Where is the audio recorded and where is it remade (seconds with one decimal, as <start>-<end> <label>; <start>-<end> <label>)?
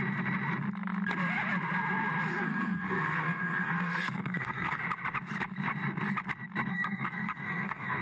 0.0-2.3 recorded; 2.3-4.8 remade; 4.8-6.7 recorded; 6.7-8.0 remade